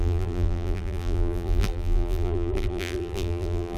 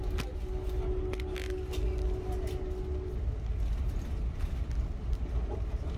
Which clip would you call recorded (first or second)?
second